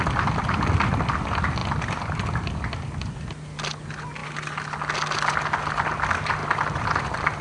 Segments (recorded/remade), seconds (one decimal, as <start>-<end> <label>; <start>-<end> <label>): 0.0-1.6 recorded; 1.6-2.7 remade; 2.7-6.4 recorded; 6.4-7.4 remade